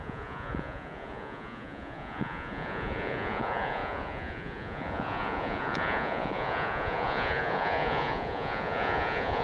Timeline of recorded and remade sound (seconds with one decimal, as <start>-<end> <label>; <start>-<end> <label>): 0.0-9.4 remade